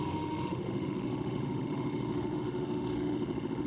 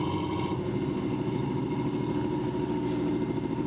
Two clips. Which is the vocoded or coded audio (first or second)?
first